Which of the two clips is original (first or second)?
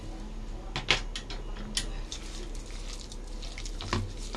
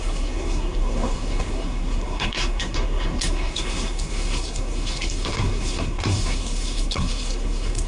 first